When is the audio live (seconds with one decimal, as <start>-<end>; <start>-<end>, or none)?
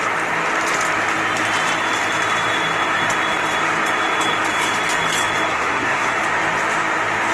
0.0-5.5; 6.2-7.3